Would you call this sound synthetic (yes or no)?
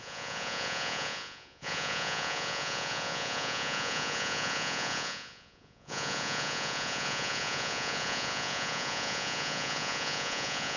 yes